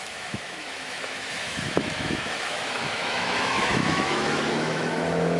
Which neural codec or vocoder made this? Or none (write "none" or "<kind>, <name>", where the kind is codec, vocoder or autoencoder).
autoencoder, DAC-VAE